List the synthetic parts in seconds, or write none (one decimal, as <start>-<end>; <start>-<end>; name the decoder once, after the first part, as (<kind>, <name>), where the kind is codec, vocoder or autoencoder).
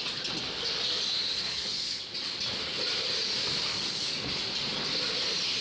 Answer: 1.2-2.0 (codec, DAC); 3.7-4.3